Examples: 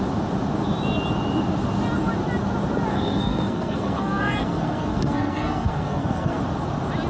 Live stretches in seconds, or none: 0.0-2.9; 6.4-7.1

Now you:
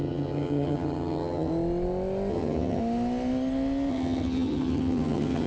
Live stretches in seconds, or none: 1.5-2.3; 2.8-3.9

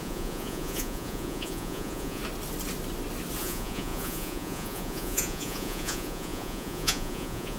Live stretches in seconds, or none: 2.2-3.4